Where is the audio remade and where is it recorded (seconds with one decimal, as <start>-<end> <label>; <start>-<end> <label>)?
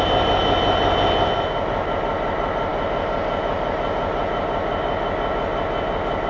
0.0-6.3 recorded